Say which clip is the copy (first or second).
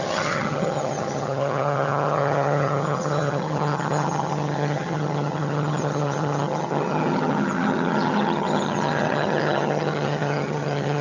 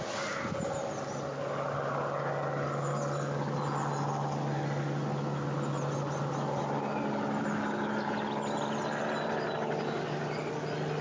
first